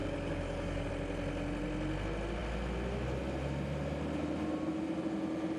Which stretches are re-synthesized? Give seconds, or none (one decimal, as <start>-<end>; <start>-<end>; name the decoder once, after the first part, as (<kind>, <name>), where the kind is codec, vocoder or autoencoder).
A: 0.0-0.9 (codec, DAC)